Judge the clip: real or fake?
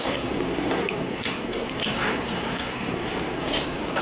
fake